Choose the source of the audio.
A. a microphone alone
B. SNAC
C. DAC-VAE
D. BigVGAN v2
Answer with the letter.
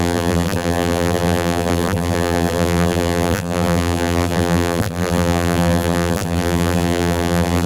D